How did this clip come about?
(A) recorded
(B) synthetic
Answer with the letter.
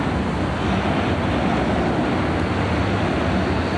A